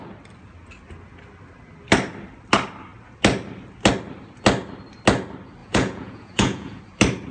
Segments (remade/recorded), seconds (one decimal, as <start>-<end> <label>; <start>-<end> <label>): 0.0-5.6 recorded; 5.6-6.8 remade; 6.8-7.3 recorded